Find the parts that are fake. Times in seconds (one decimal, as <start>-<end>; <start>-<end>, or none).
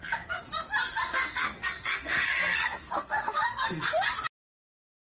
0.8-3.9